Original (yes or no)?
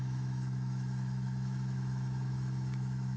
no